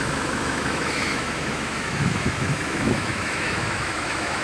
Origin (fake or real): fake